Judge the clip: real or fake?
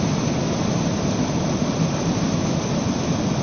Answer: real